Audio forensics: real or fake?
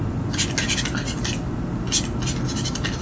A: real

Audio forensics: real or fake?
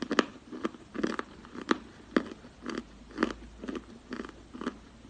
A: real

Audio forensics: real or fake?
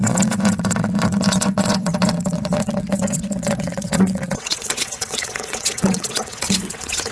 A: fake